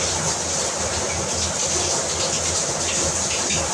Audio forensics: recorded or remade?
recorded